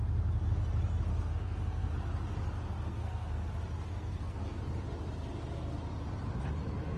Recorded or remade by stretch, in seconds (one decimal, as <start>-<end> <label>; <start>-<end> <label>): 0.0-1.1 recorded; 1.1-1.9 remade; 1.9-2.9 recorded; 2.9-3.5 remade; 3.5-3.9 recorded; 3.9-4.6 remade; 4.6-7.0 recorded

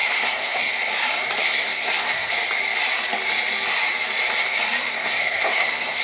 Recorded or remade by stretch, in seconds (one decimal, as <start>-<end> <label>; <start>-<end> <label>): 0.0-0.7 remade; 0.7-1.4 recorded; 1.4-2.3 remade; 2.3-4.9 recorded; 4.9-6.0 remade